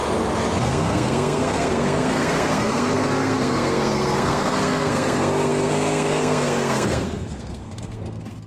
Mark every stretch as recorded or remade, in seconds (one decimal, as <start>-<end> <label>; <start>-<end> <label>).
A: 0.0-0.6 recorded; 0.6-8.5 remade